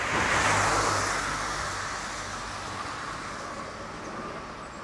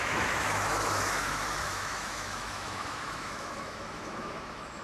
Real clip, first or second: first